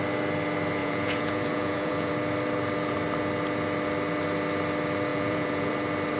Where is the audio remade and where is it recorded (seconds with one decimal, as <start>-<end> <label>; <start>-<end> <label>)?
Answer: 0.0-0.8 recorded; 0.8-2.1 remade; 2.1-5.1 recorded; 5.1-5.7 remade; 5.7-6.2 recorded

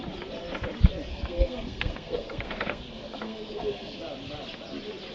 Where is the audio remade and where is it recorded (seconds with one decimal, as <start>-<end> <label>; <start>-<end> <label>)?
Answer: 0.0-1.1 recorded; 1.1-4.0 remade; 4.0-5.1 recorded

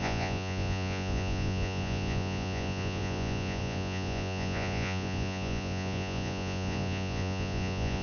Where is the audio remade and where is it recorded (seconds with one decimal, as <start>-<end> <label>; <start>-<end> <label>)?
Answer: 0.0-8.0 remade